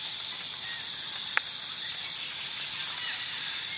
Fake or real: real